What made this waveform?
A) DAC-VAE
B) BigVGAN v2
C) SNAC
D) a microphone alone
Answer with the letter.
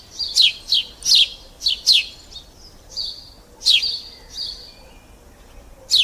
D